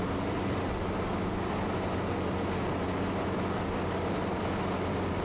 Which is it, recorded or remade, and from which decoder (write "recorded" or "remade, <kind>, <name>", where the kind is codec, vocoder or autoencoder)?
recorded